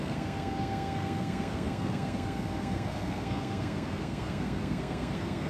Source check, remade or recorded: remade